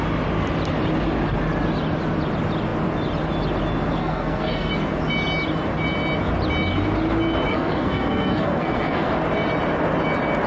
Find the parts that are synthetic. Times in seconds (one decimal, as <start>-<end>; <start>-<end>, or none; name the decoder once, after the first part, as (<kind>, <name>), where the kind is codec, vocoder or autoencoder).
4.0-4.7 (codec, SNAC); 7.5-9.1